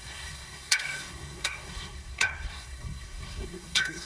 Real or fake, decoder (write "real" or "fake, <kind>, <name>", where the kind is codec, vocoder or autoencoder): fake, codec, SNAC